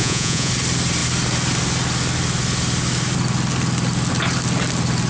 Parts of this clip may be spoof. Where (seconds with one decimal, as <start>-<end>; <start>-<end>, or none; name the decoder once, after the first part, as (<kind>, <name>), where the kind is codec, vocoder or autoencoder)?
0.0-0.5 (vocoder, Vocos)